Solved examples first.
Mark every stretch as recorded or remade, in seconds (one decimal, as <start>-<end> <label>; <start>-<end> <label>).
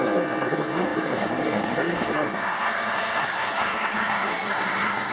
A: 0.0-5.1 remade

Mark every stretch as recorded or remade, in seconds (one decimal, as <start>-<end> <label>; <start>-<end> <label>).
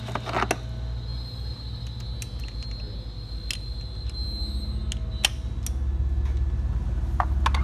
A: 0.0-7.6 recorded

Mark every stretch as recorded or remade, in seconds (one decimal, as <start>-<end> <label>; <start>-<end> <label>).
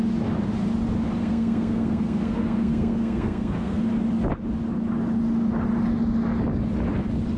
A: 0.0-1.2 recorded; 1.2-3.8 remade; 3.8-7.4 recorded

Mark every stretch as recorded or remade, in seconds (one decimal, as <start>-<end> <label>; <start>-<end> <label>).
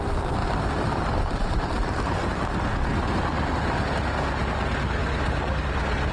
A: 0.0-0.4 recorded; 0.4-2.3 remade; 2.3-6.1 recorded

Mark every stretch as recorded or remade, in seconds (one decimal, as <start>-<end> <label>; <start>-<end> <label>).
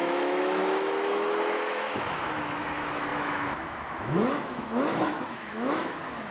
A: 0.0-6.3 remade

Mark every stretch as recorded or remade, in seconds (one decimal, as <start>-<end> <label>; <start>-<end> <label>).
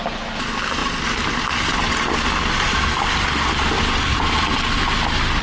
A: 0.0-5.4 recorded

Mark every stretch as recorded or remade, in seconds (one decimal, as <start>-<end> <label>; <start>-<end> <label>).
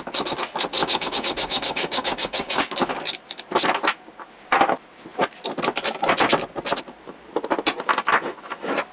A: 0.0-0.8 recorded; 0.8-2.7 remade; 2.7-8.9 recorded